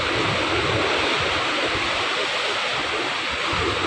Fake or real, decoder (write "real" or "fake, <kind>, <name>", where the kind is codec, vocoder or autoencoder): real